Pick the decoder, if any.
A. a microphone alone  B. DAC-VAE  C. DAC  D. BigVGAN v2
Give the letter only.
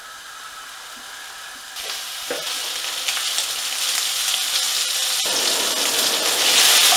A